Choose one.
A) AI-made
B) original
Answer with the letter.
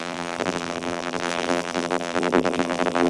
A